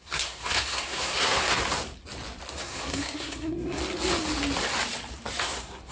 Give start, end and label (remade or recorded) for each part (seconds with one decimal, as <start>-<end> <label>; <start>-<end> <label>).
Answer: 0.0-1.6 remade; 1.6-2.5 recorded; 2.5-3.8 remade; 3.8-5.4 recorded; 5.4-5.9 remade

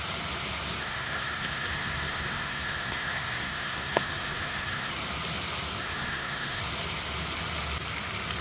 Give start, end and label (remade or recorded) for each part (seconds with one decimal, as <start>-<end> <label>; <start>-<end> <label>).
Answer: 0.0-0.8 recorded; 0.8-4.9 remade; 4.9-5.8 recorded; 5.8-6.6 remade; 6.6-8.4 recorded

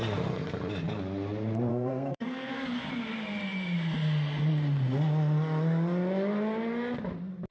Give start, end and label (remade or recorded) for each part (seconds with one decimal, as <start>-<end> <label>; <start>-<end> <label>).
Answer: 0.0-1.7 recorded; 1.7-2.5 remade; 2.5-7.5 recorded